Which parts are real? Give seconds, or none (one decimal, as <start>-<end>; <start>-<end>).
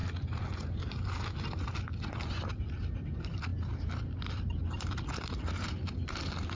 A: 0.0-2.3; 3.5-4.2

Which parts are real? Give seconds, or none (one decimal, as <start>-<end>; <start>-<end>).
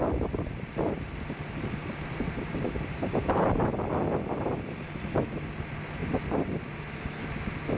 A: 0.0-1.8; 3.6-7.8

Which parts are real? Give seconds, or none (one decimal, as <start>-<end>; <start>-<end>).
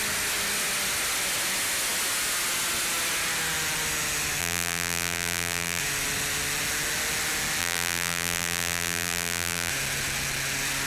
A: 0.0-4.4; 5.8-7.6; 9.7-10.9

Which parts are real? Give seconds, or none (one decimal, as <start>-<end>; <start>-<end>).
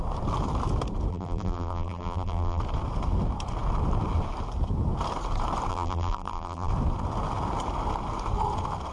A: 0.0-1.1; 2.6-5.7; 6.7-8.9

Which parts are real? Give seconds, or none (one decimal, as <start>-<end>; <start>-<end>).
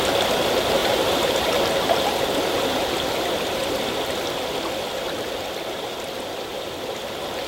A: 0.0-0.8; 1.5-7.5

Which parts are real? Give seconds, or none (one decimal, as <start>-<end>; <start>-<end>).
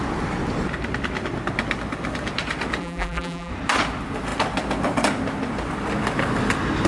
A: 0.0-2.8; 3.5-6.9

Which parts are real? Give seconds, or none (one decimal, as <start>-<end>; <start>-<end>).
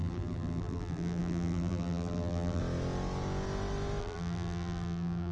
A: 2.6-4.0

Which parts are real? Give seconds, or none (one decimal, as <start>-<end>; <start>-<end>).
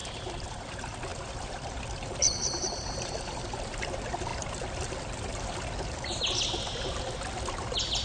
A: 0.6-1.1; 3.5-8.0